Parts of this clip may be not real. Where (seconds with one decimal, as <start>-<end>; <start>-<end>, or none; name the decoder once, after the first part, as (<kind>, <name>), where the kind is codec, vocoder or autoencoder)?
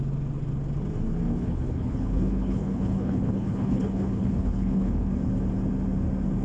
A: 1.3-5.1 (codec, HILCodec)